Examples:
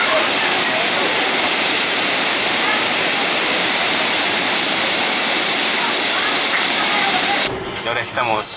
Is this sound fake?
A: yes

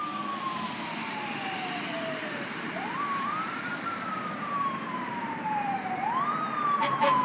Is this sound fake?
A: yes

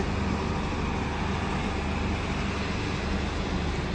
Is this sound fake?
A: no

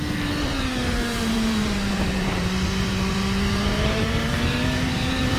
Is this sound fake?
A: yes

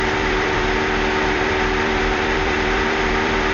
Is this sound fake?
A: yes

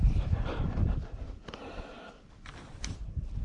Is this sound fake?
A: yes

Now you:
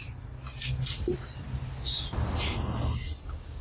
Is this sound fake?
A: no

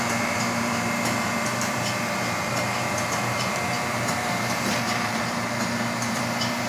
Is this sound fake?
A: yes